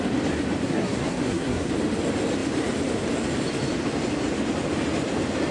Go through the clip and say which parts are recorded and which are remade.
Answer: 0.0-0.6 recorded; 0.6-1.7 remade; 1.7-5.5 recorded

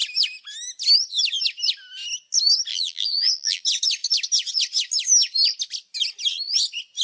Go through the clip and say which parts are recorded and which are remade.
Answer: 0.0-2.7 recorded; 2.7-3.6 remade; 3.6-7.0 recorded